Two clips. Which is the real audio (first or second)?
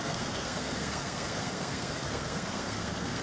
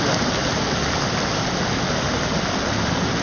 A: second